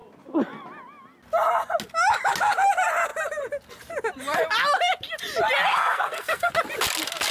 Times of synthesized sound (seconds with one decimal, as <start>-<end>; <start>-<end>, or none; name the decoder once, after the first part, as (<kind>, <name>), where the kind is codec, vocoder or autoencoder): 5.7-6.5 (codec, SNAC)